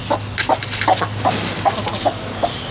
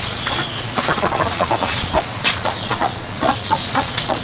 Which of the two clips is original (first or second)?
first